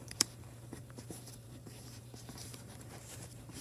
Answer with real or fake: fake